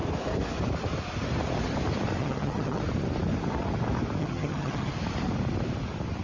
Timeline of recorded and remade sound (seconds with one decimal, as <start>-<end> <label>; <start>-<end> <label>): 0.0-2.2 recorded; 2.2-2.8 remade; 2.8-4.2 recorded; 4.2-4.9 remade; 4.9-6.2 recorded